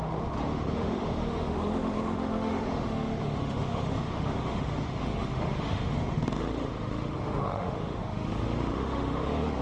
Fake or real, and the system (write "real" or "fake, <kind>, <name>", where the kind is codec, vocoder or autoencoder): fake, autoencoder, DAC-VAE